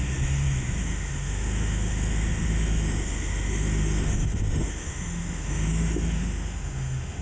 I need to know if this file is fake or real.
fake